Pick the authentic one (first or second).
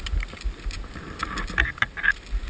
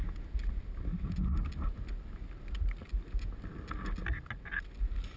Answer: second